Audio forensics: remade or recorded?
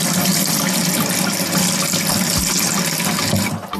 recorded